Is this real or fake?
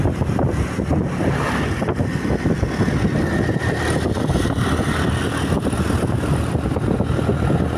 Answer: real